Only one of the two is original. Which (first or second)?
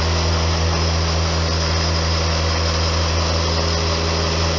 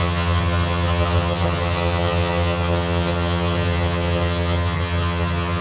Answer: first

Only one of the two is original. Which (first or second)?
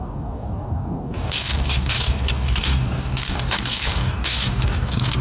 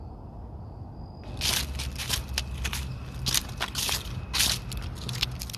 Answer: second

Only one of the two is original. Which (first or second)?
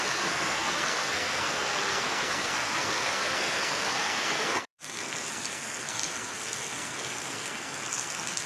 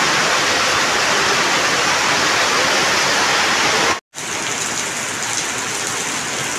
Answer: second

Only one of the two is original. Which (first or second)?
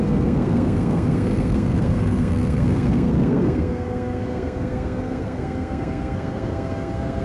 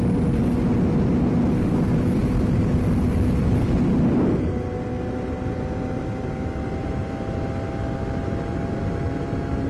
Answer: second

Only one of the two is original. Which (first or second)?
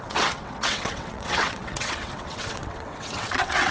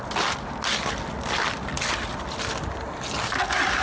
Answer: second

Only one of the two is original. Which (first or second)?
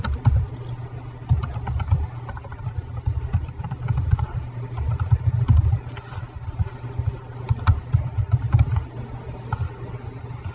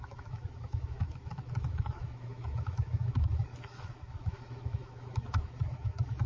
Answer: first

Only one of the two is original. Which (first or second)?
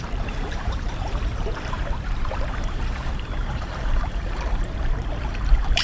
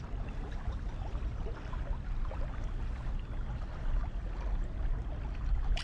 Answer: second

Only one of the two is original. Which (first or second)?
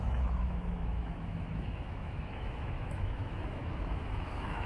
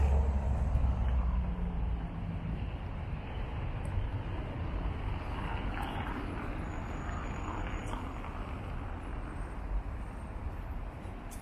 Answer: second